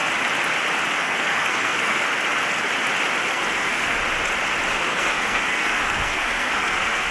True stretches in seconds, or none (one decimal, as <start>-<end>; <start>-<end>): 0.0-1.0; 2.1-3.3; 4.0-4.7